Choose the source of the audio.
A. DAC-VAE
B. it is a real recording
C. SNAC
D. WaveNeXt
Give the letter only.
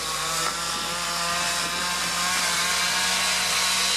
B